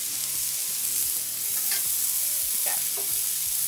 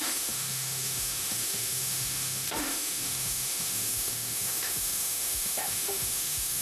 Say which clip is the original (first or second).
first